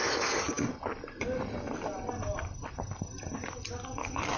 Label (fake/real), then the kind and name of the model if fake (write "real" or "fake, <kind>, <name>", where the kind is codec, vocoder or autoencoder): real